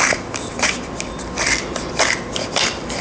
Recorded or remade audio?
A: remade